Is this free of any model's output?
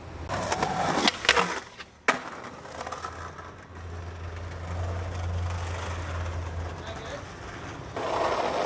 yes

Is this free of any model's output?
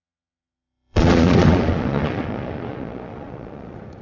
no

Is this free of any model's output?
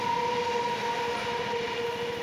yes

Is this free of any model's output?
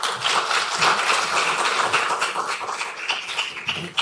yes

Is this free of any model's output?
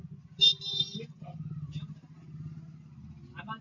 yes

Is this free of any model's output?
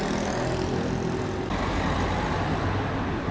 yes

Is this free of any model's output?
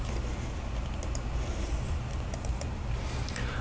yes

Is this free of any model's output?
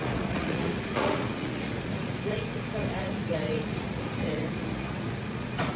no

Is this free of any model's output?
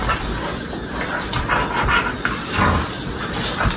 yes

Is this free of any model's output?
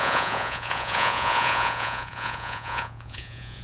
no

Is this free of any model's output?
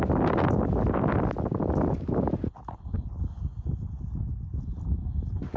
yes